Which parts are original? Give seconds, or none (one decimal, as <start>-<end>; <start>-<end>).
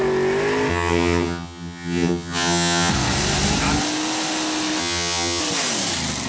0.0-0.7; 2.9-4.8; 5.4-6.3